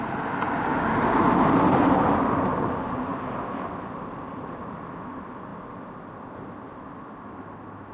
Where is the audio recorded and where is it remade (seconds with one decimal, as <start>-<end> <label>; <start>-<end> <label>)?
0.0-0.7 recorded; 0.7-1.2 remade; 1.2-7.9 recorded